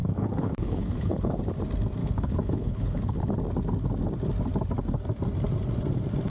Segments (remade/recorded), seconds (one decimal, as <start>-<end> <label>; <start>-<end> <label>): 0.0-1.4 remade; 1.4-2.0 recorded; 2.0-3.2 remade; 3.2-6.3 recorded